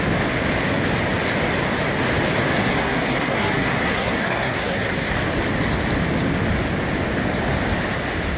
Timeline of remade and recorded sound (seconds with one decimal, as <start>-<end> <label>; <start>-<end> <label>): 0.0-2.7 recorded; 2.7-5.1 remade; 5.1-8.4 recorded